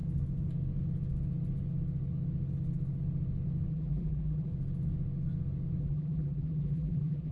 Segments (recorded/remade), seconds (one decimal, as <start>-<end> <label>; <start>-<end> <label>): 0.0-3.7 recorded; 3.7-4.5 remade; 4.5-5.8 recorded; 5.8-7.3 remade